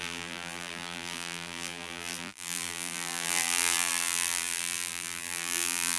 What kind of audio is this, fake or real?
fake